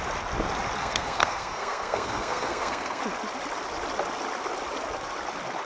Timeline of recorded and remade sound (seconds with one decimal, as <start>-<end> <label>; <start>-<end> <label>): 0.0-0.8 recorded; 0.8-3.0 remade; 3.0-5.6 recorded